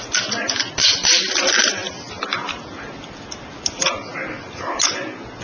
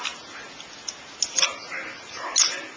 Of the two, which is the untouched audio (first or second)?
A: second